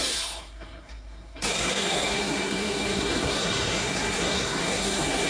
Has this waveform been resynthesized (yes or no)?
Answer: yes